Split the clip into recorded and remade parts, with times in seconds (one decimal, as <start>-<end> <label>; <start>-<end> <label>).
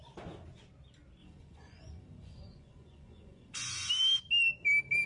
0.0-1.2 recorded; 1.2-3.9 remade; 3.9-5.1 recorded